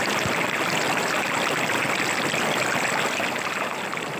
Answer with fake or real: real